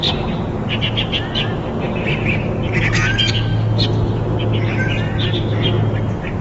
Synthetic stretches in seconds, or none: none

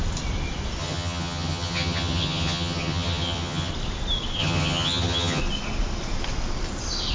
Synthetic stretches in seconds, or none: 0.8-3.7 (vocoder, HiFi-GAN); 4.4-5.4

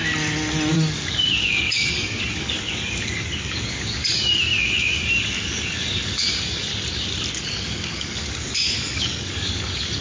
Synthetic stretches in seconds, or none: 0.7-6.7 (codec, DAC); 7.5-10.0

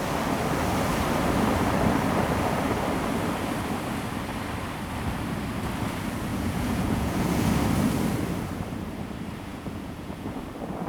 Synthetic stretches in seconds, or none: 6.3-7.5 (vocoder, Vocos); 9.5-10.4

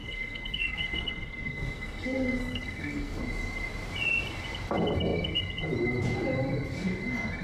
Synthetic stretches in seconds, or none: 0.0-3.2 (codec, SNAC)

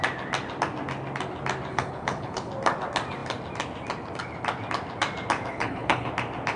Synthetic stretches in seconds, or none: 1.7-2.5 (codec, HILCodec); 5.5-6.1

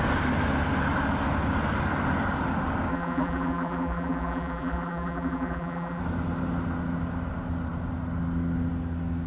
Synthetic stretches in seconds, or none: 2.9-6.0 (vocoder, BigVGAN v2)

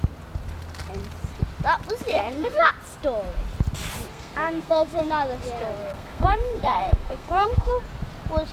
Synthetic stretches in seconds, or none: 2.1-2.7 (codec, SNAC); 4.1-5.1; 5.8-7.7